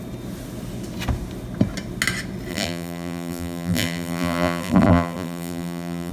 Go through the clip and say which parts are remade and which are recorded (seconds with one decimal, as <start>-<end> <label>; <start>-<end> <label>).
0.0-2.5 recorded; 2.5-6.1 remade